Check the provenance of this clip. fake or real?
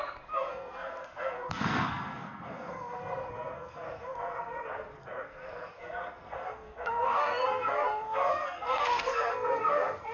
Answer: fake